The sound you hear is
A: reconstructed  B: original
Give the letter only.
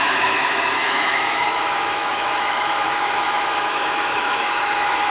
A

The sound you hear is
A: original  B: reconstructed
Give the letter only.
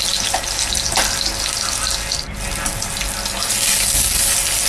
A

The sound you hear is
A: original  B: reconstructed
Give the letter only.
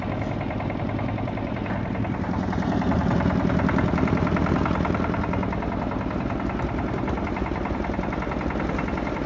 A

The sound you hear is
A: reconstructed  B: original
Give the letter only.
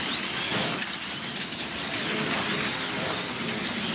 B